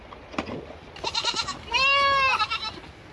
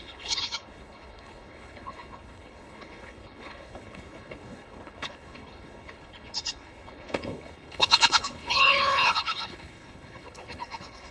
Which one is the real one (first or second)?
first